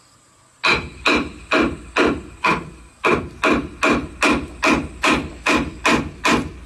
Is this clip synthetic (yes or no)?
no